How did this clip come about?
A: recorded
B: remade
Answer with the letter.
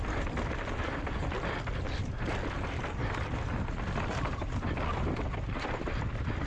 A